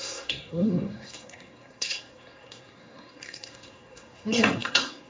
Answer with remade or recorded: remade